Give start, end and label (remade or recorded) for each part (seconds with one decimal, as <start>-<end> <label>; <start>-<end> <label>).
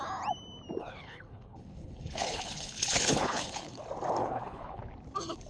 0.0-0.8 recorded; 0.8-3.8 remade; 3.8-4.2 recorded; 4.2-4.8 remade; 4.8-5.5 recorded